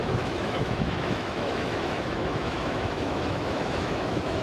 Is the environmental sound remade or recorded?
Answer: remade